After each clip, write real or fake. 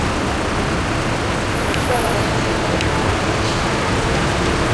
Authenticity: real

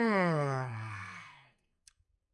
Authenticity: fake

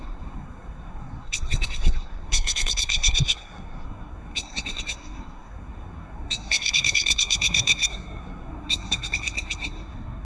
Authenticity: fake